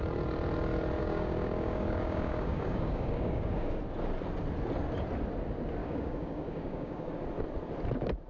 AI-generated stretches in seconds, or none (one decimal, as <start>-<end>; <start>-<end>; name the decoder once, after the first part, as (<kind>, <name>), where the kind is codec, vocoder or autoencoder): 1.0-3.8 (codec, DAC); 5.8-7.1